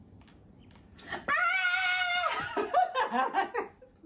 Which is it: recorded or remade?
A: recorded